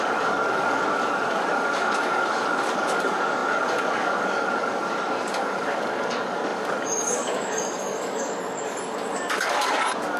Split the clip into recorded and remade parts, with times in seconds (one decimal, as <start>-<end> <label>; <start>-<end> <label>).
0.0-10.2 remade